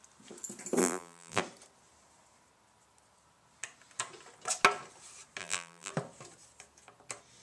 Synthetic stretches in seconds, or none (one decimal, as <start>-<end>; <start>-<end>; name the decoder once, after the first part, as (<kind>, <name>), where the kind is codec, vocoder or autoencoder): 0.8-1.4 (vocoder, BigVGAN v2); 5.4-5.9